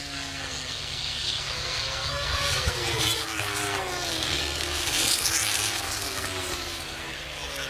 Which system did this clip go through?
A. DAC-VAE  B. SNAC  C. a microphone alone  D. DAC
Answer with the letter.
B